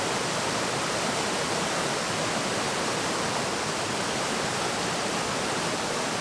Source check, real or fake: real